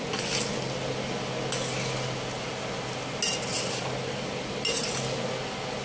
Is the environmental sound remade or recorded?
recorded